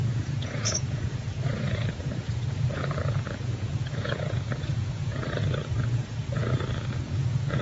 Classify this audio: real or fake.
fake